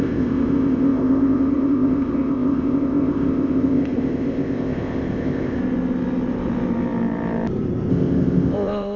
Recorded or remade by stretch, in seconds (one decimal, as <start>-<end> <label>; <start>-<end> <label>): 0.0-5.6 remade; 5.6-7.9 recorded; 7.9-9.0 remade